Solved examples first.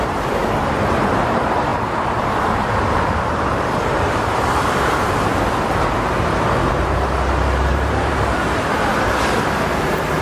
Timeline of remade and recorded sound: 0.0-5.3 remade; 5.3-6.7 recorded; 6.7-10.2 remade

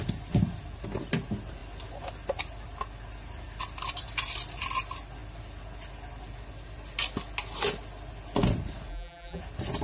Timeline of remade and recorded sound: 0.0-8.9 recorded; 8.9-9.4 remade; 9.4-9.8 recorded

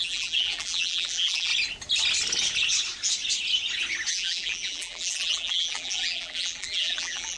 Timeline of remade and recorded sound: 0.0-1.5 remade; 1.5-4.1 recorded; 4.1-7.4 remade

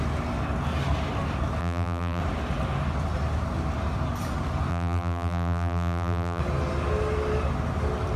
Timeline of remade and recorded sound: 0.0-1.6 recorded; 1.6-2.2 remade; 2.2-4.7 recorded; 4.7-6.4 remade; 6.4-8.2 recorded

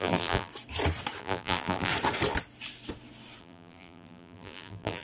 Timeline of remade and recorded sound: 0.0-0.5 remade; 0.5-1.2 recorded; 1.2-1.9 remade; 1.9-3.4 recorded; 3.4-5.0 remade

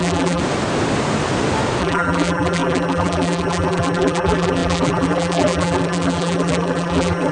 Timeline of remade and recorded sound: 0.0-0.4 remade; 0.4-1.8 recorded; 1.8-7.3 remade

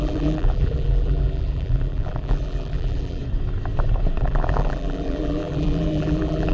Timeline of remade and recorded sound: 0.0-3.2 remade; 3.2-4.2 recorded; 4.2-6.5 remade

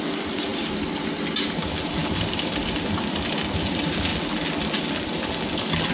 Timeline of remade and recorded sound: 0.0-5.9 recorded